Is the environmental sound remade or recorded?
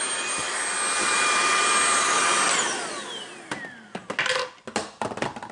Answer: recorded